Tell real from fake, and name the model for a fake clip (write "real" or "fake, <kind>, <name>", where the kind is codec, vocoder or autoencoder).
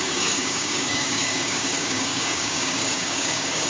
fake, codec, DAC